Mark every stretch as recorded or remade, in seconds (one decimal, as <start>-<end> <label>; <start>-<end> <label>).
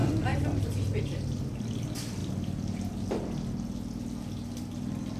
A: 0.0-1.0 remade; 1.0-2.2 recorded; 2.2-2.9 remade; 2.9-5.2 recorded